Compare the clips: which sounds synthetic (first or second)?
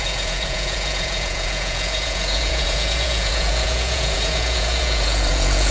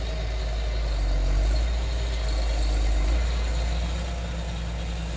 first